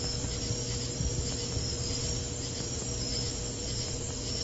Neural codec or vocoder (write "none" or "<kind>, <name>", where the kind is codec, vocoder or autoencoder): vocoder, BigVGAN v2